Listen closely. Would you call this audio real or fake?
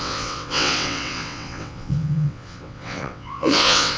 fake